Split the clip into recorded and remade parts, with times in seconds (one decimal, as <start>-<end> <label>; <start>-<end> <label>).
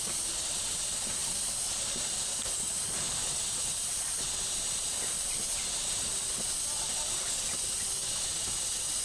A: 0.0-9.0 recorded